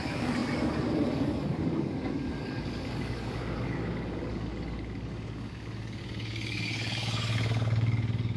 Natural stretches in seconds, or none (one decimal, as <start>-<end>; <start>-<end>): none